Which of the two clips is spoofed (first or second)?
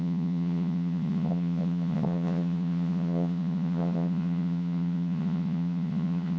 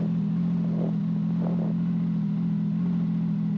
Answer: first